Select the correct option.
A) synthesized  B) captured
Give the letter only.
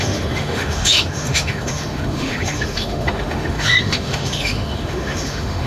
A